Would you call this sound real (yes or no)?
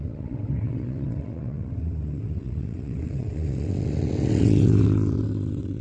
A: no